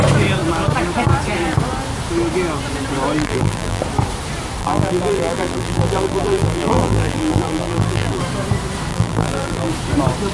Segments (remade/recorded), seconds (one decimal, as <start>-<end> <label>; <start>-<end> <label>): 0.0-3.2 recorded; 3.2-3.8 remade; 3.8-4.6 recorded; 4.6-8.2 remade; 8.2-8.9 recorded; 8.9-9.7 remade; 9.7-10.3 recorded